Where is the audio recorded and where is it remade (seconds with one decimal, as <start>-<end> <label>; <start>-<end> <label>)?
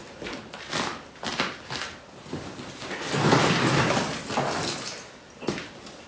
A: 0.0-0.9 recorded; 0.9-3.5 remade; 3.5-6.1 recorded